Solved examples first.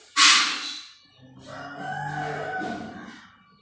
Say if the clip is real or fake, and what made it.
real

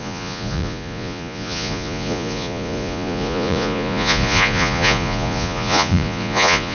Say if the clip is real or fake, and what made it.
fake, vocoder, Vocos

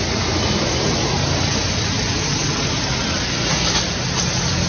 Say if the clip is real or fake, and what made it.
real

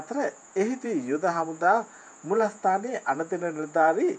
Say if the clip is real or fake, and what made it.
fake, vocoder, Vocos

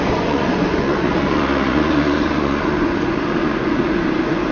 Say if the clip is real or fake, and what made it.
fake, vocoder, Vocos